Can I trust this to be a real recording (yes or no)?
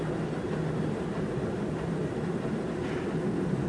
yes